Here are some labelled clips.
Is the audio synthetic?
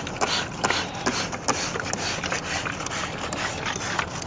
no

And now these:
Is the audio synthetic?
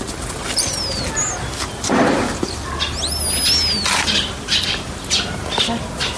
no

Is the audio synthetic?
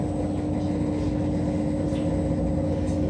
no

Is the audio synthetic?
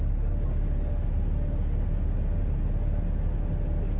no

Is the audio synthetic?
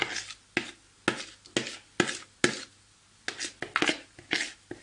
no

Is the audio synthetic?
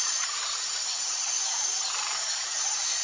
yes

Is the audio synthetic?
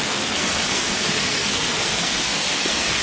yes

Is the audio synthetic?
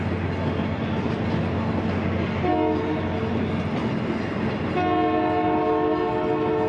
no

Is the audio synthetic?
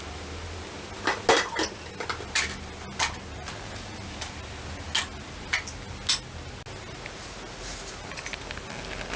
no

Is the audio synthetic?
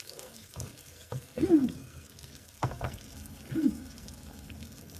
yes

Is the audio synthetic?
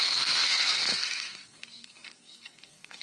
yes